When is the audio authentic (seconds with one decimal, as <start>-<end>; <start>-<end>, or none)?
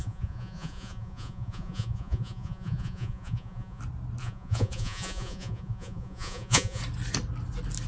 3.8-4.2; 6.8-7.9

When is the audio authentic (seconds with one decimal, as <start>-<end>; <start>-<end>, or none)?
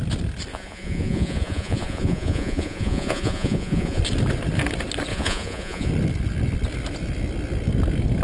0.0-0.5; 4.0-5.1; 5.9-8.2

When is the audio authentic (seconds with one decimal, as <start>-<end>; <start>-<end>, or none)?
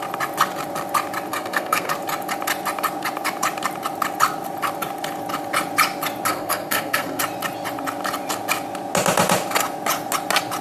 0.0-1.3; 1.9-6.3; 7.2-10.6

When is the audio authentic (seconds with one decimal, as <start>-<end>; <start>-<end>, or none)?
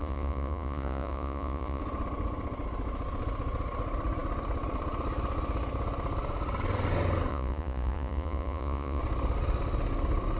1.8-7.3; 9.0-10.4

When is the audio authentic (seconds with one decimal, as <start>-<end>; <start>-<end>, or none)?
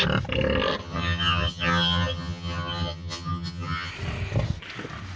0.0-0.8; 3.9-5.2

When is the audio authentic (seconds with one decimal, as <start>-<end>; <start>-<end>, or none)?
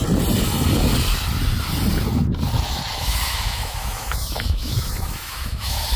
0.0-3.0